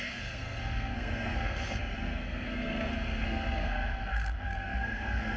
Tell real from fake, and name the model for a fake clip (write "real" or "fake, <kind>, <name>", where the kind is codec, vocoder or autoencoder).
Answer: fake, codec, SNAC